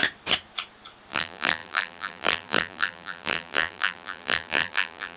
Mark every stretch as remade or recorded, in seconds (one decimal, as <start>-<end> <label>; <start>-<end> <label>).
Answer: 0.0-1.1 recorded; 1.1-5.2 remade